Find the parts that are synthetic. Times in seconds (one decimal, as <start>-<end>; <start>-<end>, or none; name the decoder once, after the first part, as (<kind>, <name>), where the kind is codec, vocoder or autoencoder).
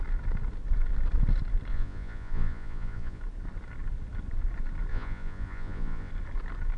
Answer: 1.7-3.2 (vocoder, Vocos); 4.9-6.1